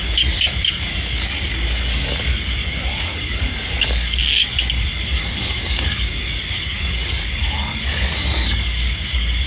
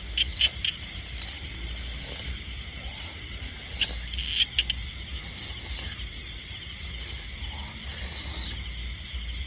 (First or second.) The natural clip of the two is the second